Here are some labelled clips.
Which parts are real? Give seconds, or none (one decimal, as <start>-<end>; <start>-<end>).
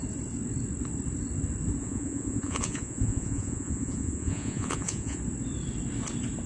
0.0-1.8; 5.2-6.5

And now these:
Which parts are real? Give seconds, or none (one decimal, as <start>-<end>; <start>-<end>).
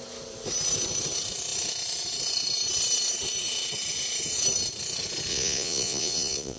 0.0-5.3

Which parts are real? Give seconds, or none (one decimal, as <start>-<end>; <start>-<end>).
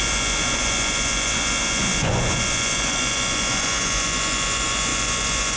none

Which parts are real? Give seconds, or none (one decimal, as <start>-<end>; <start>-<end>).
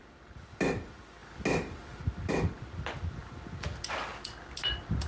0.0-5.1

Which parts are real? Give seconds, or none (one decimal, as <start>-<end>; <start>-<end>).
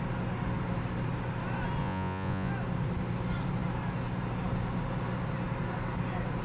0.0-1.8; 2.5-6.4